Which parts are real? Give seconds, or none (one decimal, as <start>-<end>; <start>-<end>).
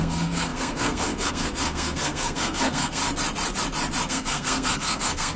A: 3.0-4.1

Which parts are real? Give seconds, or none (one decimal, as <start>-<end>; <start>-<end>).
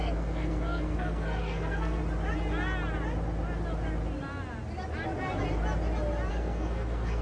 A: 2.0-6.3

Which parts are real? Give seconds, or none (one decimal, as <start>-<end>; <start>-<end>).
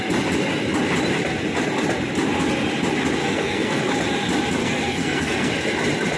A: 0.0-3.2; 3.8-4.6; 5.5-6.2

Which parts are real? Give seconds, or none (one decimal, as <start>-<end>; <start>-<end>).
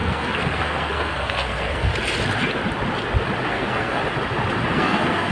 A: 1.9-3.5; 4.0-4.7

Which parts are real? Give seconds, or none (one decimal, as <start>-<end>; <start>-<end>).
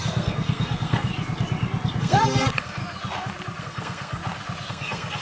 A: 1.1-2.0; 2.8-3.6; 4.2-4.7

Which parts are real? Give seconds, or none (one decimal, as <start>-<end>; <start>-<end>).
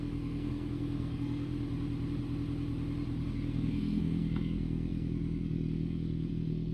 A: 1.5-3.3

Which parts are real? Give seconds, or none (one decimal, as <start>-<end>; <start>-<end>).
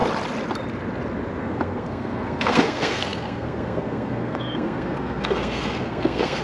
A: 0.0-1.4